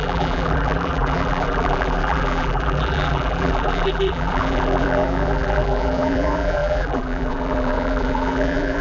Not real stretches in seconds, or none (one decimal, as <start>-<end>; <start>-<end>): 0.0-8.8